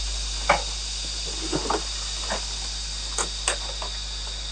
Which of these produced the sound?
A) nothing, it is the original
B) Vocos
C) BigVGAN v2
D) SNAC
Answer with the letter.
A